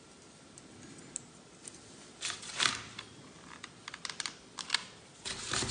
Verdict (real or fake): real